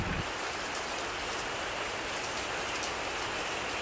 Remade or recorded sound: recorded